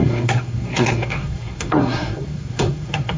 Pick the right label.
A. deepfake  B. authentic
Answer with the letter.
A